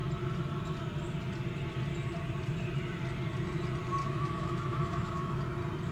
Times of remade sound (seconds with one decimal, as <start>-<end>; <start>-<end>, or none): 4.0-5.4